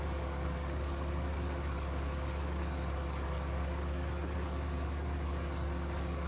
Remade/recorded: remade